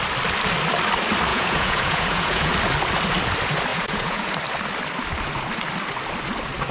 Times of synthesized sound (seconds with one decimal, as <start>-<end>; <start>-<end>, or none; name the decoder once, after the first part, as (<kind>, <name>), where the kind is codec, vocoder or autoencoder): 1.3-2.5 (vocoder, Vocos); 3.7-4.3